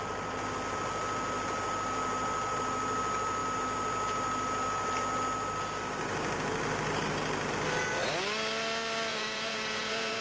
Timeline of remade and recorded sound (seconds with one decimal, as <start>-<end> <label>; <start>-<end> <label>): 0.0-9.1 recorded; 9.1-10.2 remade